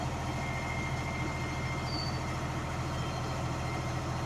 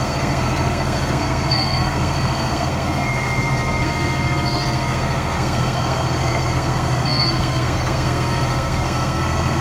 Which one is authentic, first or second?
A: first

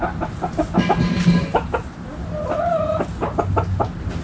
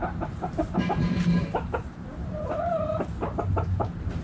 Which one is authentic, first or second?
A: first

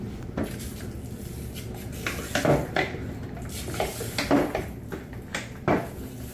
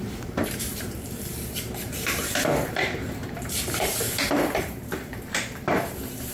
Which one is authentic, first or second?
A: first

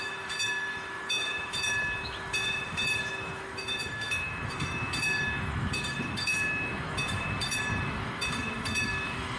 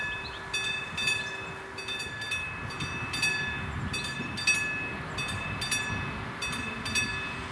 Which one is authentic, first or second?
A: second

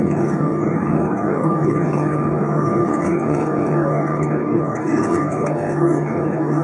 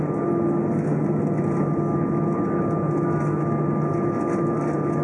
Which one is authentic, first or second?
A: second